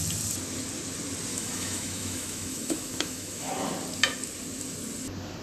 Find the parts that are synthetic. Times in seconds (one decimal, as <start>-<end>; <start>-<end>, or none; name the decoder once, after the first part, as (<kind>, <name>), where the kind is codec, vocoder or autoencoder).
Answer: 1.3-3.5 (autoencoder, DAC-VAE)